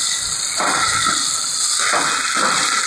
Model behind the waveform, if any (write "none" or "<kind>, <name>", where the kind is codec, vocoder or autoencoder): none